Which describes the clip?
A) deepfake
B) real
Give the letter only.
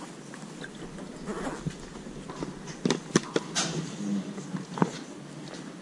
B